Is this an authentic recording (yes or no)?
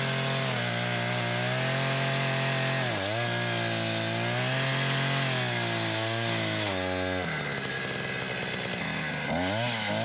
yes